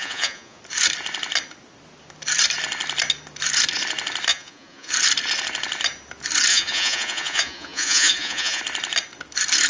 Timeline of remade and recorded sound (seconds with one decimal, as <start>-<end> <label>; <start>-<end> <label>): 0.0-0.6 remade; 0.6-4.3 recorded; 4.3-4.9 remade; 4.9-6.5 recorded; 6.5-8.6 remade; 8.6-9.7 recorded